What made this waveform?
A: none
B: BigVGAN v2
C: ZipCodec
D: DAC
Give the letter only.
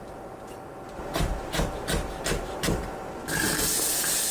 A